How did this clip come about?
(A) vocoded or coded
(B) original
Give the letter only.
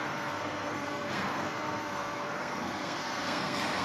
A